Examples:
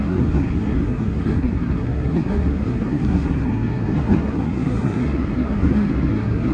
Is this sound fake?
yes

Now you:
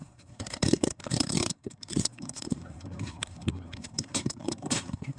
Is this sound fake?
yes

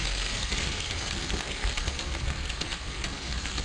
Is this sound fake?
yes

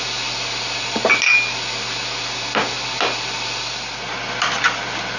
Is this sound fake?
no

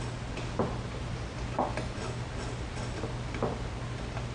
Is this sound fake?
no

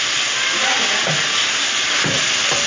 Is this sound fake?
no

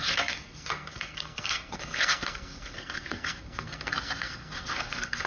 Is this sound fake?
yes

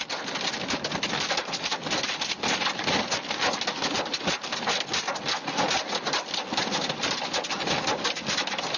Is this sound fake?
no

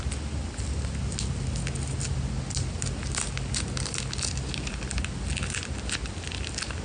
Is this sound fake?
no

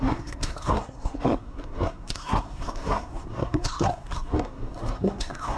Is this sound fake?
yes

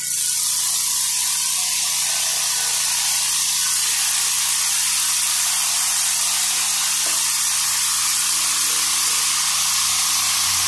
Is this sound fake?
no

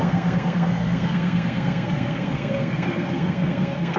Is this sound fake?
yes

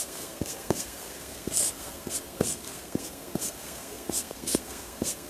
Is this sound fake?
yes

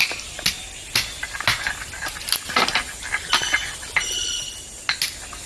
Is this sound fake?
no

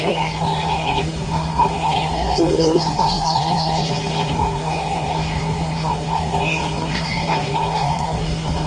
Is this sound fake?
yes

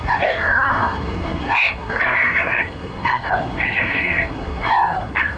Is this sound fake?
yes